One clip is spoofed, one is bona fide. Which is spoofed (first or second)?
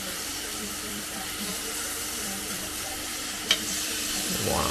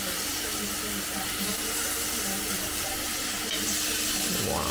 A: first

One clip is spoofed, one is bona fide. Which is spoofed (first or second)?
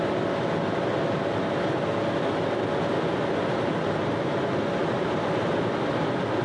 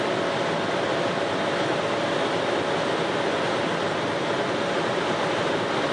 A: second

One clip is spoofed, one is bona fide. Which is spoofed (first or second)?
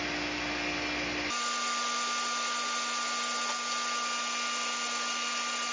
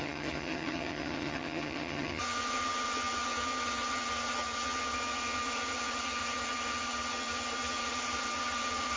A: second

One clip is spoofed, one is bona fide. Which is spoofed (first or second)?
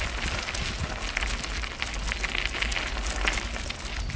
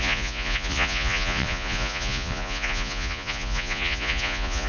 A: second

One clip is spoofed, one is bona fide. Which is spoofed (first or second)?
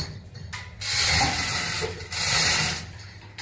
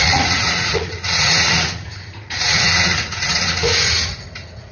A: second